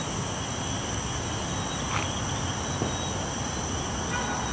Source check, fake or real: real